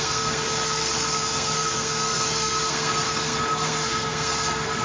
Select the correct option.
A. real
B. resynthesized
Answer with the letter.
B